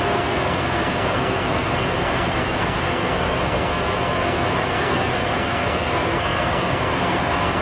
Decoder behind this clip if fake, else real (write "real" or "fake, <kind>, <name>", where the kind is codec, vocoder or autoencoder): fake, codec, SNAC